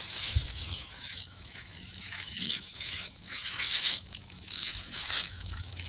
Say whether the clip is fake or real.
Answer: fake